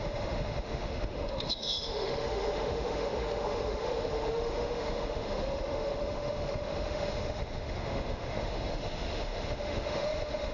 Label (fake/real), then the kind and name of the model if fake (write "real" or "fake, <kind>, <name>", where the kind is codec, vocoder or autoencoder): fake, autoencoder, DAC-VAE